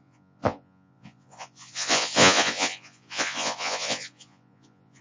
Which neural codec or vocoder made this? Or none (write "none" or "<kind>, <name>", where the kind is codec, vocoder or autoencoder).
vocoder, Vocos